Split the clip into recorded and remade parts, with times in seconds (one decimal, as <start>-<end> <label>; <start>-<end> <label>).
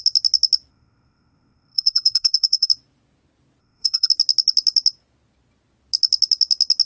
0.0-0.7 recorded; 0.7-2.7 remade; 2.7-3.6 recorded; 3.6-4.1 remade; 4.1-6.9 recorded